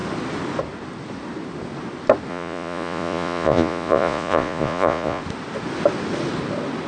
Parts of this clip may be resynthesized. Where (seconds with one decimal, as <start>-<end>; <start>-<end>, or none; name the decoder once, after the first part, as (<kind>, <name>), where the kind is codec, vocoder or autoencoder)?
2.3-5.2 (vocoder, Vocos)